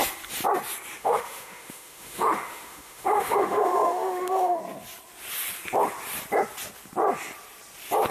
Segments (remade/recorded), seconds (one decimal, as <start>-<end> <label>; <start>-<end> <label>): 0.0-1.0 recorded; 1.0-4.6 remade; 4.6-8.1 recorded